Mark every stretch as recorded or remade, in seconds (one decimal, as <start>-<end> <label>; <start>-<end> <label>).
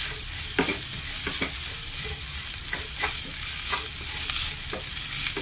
0.0-5.4 recorded